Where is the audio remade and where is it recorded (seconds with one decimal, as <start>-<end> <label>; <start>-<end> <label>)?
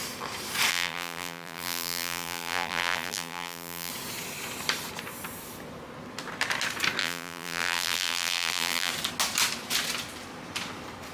0.0-0.7 recorded; 0.7-3.9 remade; 3.9-7.0 recorded; 7.0-8.9 remade; 8.9-11.1 recorded